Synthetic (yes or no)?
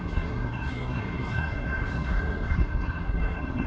yes